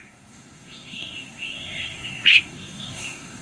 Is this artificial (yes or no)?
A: yes